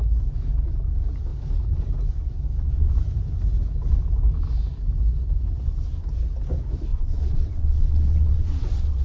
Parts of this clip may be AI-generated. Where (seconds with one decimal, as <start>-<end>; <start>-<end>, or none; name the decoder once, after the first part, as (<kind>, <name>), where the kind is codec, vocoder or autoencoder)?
6.9-9.0 (vocoder, WaveNeXt)